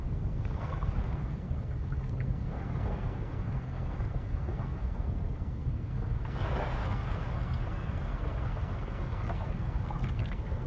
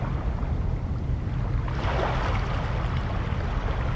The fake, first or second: first